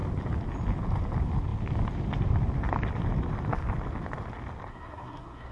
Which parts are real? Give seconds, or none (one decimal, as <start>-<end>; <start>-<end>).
0.0-4.7